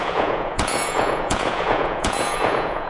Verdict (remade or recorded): remade